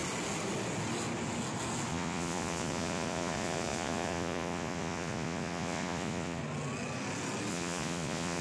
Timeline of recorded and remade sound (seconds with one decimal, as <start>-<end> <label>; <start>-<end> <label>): 0.0-1.9 recorded; 1.9-6.4 remade; 6.4-7.5 recorded; 7.5-8.4 remade